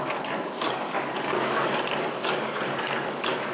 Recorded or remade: remade